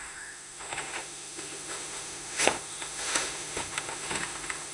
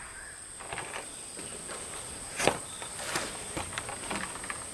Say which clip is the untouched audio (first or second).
second